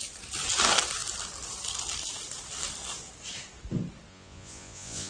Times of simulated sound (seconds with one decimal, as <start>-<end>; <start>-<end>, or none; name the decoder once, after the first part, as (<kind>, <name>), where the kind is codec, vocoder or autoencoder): 4.1-5.1 (vocoder, Vocos)